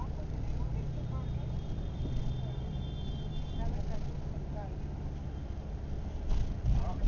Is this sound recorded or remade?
recorded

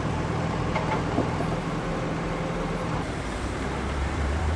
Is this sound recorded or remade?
remade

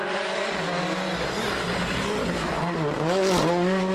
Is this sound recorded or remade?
recorded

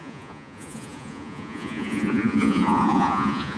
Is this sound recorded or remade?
remade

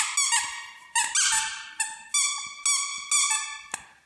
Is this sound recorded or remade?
recorded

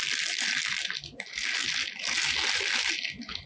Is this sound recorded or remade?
recorded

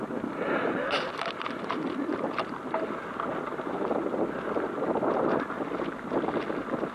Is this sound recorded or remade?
recorded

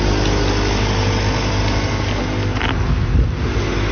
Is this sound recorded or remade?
recorded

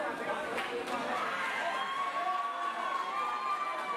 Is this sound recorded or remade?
recorded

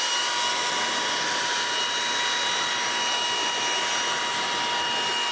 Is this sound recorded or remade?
recorded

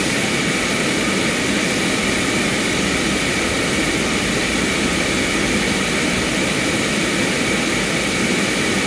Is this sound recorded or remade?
recorded